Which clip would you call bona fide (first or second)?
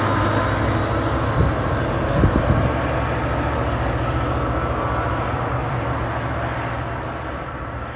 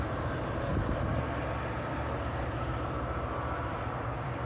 first